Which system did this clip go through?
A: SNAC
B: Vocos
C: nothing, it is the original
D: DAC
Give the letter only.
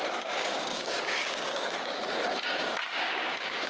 D